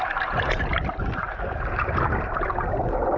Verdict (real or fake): real